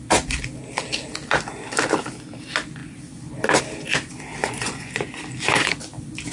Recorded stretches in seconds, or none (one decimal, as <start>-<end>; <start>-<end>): 0.0-4.4; 5.2-6.3